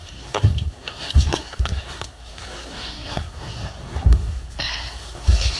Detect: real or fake fake